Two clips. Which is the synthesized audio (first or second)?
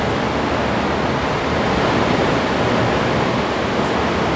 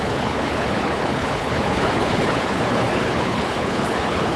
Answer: second